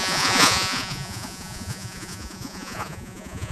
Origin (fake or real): fake